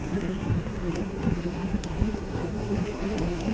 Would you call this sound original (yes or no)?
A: no